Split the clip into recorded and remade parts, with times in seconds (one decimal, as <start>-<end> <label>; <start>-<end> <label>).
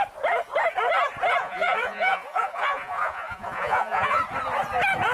0.0-1.4 recorded; 1.4-4.2 remade; 4.2-5.1 recorded